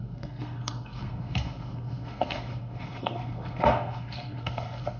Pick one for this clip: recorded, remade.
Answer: remade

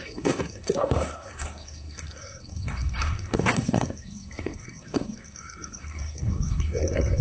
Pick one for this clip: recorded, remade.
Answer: remade